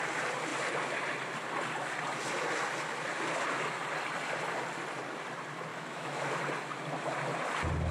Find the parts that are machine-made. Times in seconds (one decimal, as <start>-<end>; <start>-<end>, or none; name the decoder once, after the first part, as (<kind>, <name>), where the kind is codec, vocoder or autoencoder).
5.7-6.4 (autoencoder, DAC-VAE)